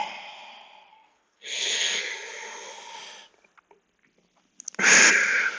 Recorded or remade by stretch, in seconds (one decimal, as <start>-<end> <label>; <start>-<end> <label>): 0.0-0.9 recorded; 0.9-2.1 remade; 2.1-5.6 recorded